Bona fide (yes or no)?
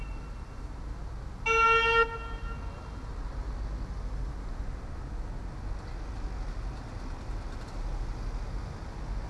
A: yes